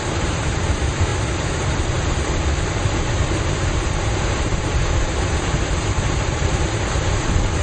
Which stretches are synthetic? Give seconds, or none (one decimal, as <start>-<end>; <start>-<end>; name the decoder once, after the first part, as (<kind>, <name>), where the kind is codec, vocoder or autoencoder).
0.0-1.1 (vocoder, BigVGAN v2); 2.7-7.6